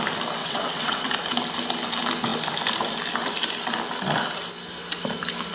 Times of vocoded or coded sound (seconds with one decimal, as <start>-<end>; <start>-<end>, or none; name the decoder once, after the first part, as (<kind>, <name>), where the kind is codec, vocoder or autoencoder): 0.4-1.1 (vocoder, WaveNeXt)